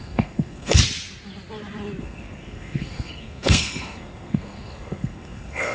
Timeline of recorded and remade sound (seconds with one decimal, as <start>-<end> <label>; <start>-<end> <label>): 0.0-0.8 remade; 0.8-2.0 recorded; 2.0-5.7 remade